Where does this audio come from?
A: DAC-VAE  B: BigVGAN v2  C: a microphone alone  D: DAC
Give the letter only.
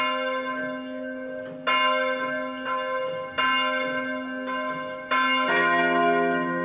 C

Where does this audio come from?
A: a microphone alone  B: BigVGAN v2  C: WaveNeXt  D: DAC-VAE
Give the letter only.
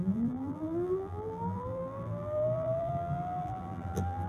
B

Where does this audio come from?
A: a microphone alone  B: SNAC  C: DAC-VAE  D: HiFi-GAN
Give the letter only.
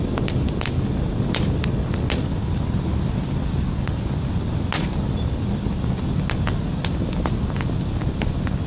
A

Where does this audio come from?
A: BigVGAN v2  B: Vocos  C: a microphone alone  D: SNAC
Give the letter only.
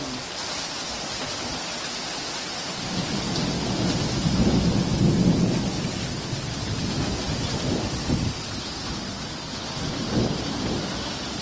C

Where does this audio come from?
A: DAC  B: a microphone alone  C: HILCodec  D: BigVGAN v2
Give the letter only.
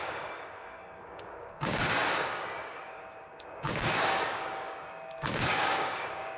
A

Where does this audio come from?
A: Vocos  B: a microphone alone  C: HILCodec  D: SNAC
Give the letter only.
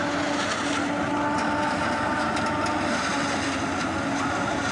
B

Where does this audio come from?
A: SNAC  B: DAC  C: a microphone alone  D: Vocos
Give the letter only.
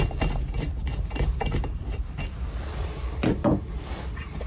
C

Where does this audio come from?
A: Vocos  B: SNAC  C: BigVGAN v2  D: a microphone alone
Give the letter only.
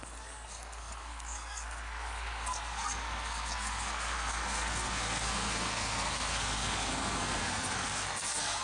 B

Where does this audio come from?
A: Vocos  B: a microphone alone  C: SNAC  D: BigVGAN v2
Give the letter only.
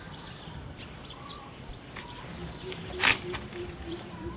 D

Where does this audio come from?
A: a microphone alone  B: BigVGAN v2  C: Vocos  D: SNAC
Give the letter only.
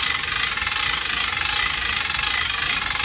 A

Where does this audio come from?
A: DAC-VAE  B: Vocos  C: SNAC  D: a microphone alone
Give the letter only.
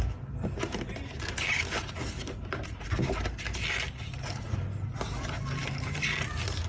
D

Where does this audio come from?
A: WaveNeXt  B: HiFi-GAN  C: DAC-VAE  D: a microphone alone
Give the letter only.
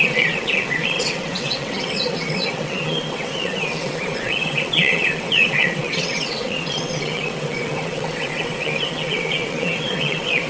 A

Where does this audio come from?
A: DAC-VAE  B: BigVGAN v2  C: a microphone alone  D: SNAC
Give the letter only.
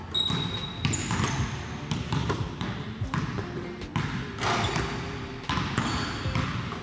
C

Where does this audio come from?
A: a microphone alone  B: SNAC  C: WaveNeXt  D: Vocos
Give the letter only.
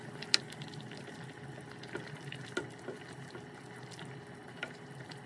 A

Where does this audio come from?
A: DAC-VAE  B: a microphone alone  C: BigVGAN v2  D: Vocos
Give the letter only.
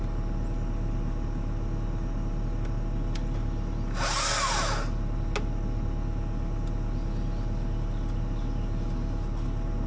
B